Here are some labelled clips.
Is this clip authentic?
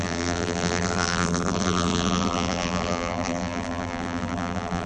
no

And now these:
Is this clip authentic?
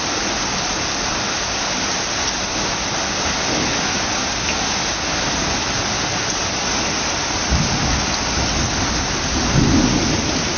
yes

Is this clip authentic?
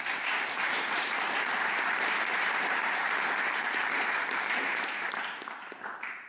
no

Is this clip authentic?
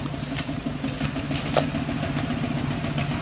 yes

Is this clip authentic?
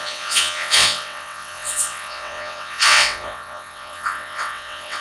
no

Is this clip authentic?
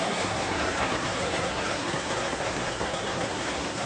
no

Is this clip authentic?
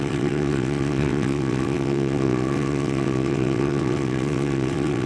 no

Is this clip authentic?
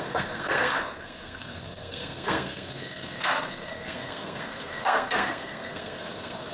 no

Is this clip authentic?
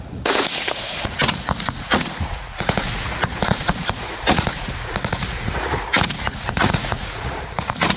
no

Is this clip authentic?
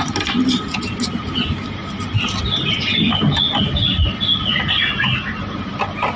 yes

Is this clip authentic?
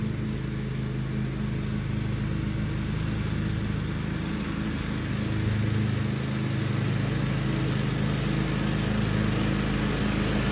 yes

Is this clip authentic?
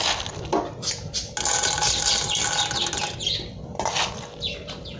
yes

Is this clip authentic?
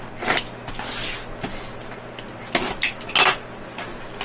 yes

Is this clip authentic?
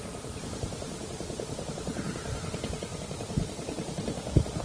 yes